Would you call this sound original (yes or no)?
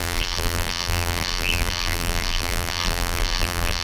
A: no